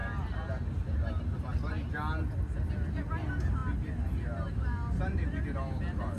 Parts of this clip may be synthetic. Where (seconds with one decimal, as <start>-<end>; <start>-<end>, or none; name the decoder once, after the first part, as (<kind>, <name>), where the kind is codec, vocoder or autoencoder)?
none